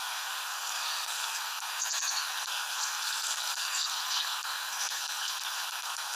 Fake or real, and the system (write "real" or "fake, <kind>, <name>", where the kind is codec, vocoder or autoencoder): fake, codec, SNAC